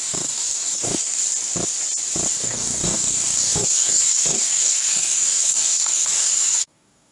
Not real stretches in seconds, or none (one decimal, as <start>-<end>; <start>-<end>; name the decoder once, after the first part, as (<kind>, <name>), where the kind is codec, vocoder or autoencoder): 0.0-1.2 (codec, DAC); 2.3-7.1